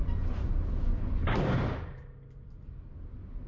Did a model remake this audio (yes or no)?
no